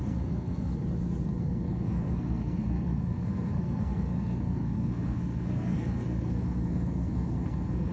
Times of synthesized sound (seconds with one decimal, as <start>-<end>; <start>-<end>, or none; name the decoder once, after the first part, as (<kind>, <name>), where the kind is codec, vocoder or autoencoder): 0.0-0.7 (codec, SNAC); 1.4-7.9